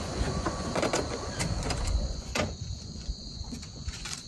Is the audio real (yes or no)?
no